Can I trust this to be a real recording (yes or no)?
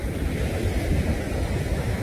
yes